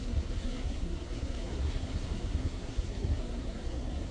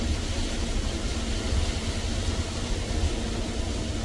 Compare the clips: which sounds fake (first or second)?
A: first